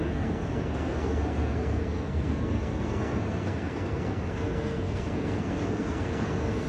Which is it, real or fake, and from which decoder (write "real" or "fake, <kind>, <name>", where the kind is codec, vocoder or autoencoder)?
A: fake, codec, SNAC